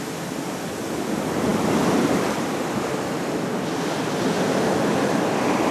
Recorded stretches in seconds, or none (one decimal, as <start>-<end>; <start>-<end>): 0.0-5.7